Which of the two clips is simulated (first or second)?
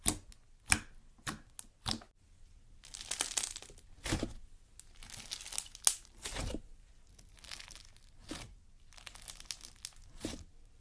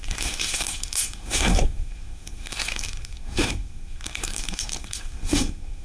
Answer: second